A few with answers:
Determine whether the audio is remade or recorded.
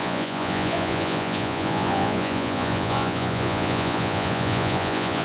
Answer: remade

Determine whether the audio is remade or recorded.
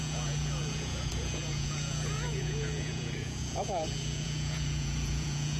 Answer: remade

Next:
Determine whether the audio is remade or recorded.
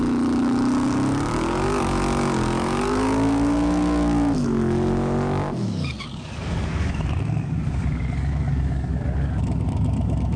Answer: remade